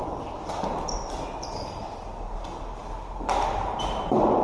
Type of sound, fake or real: real